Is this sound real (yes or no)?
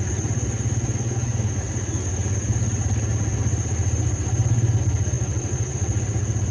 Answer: yes